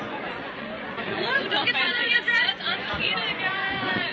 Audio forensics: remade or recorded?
remade